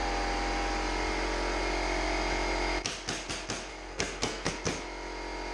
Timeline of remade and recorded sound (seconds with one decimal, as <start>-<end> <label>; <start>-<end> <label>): 0.0-3.7 recorded; 3.7-4.5 remade; 4.5-5.5 recorded